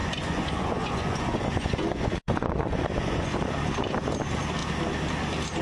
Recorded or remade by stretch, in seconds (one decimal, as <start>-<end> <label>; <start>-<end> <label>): 0.0-3.4 remade; 3.4-5.6 recorded